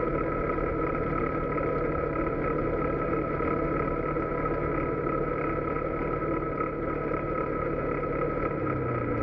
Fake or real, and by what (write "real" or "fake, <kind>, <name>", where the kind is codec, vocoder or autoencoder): real